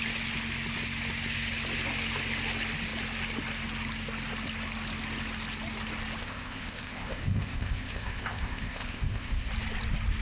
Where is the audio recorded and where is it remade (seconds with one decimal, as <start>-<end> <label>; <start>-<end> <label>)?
0.0-6.2 recorded; 6.2-9.5 remade; 9.5-10.2 recorded